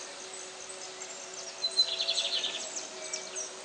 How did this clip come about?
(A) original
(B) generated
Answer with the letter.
A